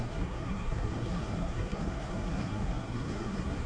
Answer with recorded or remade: remade